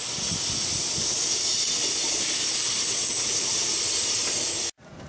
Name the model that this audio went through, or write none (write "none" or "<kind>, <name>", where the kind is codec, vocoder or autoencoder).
none